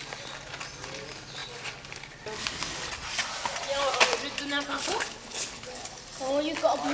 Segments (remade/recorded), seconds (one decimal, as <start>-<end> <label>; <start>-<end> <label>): 0.0-4.7 recorded; 4.7-6.0 remade; 6.0-6.9 recorded

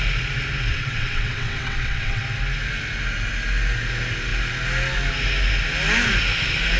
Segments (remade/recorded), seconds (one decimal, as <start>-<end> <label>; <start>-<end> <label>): 0.0-0.7 recorded; 0.7-2.2 remade; 2.2-6.8 recorded

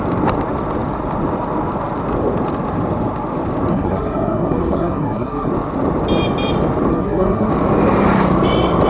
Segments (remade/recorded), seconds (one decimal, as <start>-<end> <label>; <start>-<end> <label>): 0.0-3.7 recorded; 3.7-5.5 remade; 5.5-6.9 recorded; 6.9-7.5 remade; 7.5-8.9 recorded

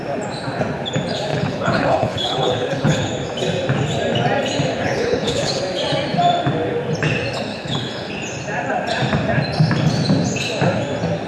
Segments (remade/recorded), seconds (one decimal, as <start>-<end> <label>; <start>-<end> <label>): 0.0-1.3 recorded; 1.3-3.1 remade; 3.1-4.7 recorded; 4.7-5.6 remade; 5.6-7.5 recorded; 7.5-8.1 remade; 8.1-11.3 recorded

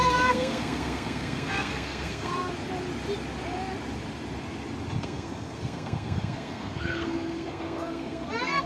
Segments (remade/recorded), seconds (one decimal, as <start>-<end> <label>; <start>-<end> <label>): 0.0-2.5 remade; 2.5-5.0 recorded; 5.0-8.7 remade

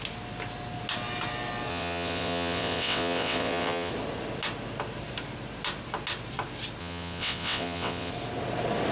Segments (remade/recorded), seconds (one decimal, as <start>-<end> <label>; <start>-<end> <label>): 0.0-1.7 recorded; 1.7-3.9 remade; 3.9-6.8 recorded; 6.8-8.1 remade; 8.1-8.9 recorded